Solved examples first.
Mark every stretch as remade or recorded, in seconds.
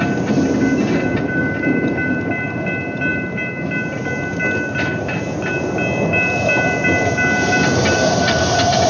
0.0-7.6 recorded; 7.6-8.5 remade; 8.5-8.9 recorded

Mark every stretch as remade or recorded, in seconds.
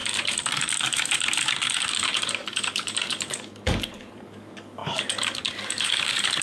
0.0-6.4 remade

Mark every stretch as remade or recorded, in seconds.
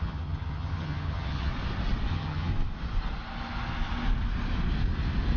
0.0-1.5 remade; 1.5-2.1 recorded; 2.1-2.5 remade; 2.5-5.4 recorded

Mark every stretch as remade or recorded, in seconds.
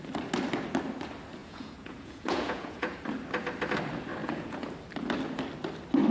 0.0-1.4 recorded; 1.4-3.0 remade; 3.0-4.2 recorded; 4.2-4.7 remade; 4.7-6.1 recorded